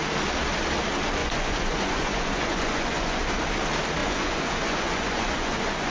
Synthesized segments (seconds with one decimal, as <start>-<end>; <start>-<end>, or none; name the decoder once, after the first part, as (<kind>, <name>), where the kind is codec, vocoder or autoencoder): 1.2-3.2 (vocoder, Vocos); 4.0-5.9